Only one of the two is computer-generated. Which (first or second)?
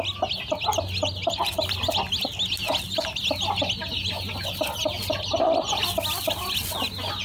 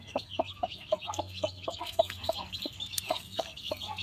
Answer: second